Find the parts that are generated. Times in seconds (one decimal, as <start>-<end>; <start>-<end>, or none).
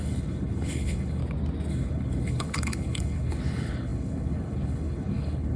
0.0-1.2; 1.7-5.6